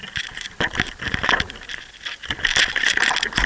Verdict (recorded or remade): recorded